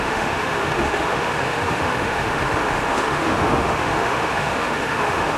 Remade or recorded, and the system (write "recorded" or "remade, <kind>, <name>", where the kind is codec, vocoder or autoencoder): remade, autoencoder, DAC-VAE